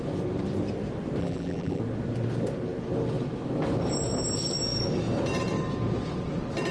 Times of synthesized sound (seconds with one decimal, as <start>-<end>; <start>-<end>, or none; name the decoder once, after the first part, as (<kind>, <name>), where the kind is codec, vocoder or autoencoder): 1.2-1.8 (vocoder, BigVGAN v2)